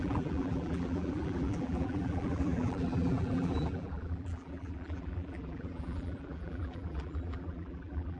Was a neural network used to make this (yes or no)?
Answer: yes